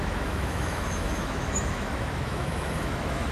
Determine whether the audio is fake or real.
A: fake